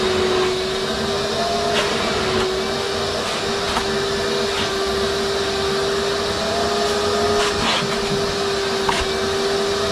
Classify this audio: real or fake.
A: real